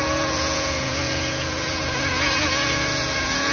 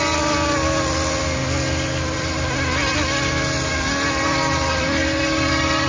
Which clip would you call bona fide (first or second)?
second